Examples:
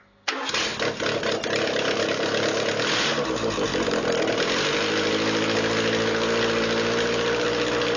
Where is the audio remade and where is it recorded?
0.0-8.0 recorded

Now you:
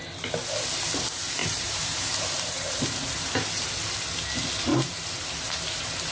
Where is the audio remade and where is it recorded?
0.0-1.4 recorded; 1.4-3.7 remade; 3.7-4.7 recorded; 4.7-6.1 remade

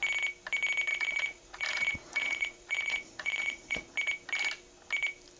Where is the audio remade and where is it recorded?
0.0-0.9 recorded; 0.9-3.9 remade; 3.9-5.4 recorded

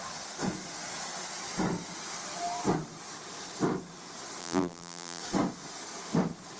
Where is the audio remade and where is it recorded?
0.0-4.4 recorded; 4.4-5.2 remade; 5.2-6.6 recorded

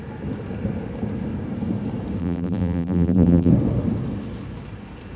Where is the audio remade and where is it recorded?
0.0-2.2 recorded; 2.2-3.5 remade; 3.5-5.2 recorded

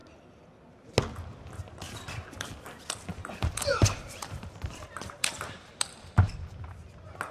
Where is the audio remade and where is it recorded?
0.0-3.1 recorded; 3.1-6.3 remade; 6.3-7.3 recorded

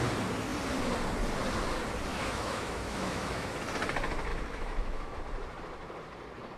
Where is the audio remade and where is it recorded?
0.0-2.1 recorded; 2.1-3.6 remade; 3.6-4.3 recorded; 4.3-5.2 remade; 5.2-6.6 recorded

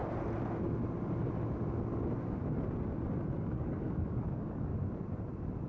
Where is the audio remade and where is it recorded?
0.0-3.4 recorded; 3.4-4.7 remade; 4.7-5.7 recorded